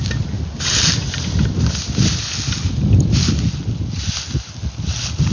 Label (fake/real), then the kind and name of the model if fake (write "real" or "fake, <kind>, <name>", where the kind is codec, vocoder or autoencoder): real